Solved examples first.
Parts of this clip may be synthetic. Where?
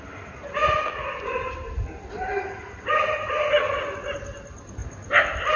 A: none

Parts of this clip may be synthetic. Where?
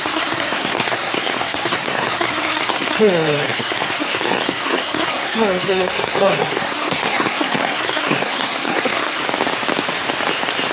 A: 0.0-9.2 (codec, SNAC)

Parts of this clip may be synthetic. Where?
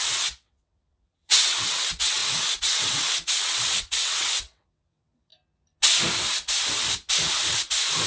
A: 0.0-5.3 (vocoder, WaveNeXt)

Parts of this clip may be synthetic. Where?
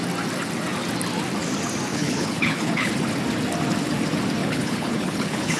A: 1.9-2.9 (codec, HILCodec); 4.4-5.6